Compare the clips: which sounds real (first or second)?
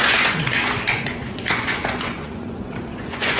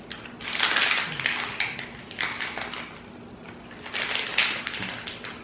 second